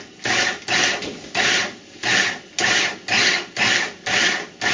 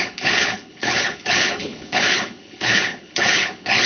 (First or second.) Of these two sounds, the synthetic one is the second